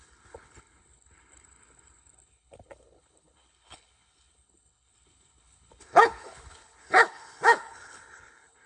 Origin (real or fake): fake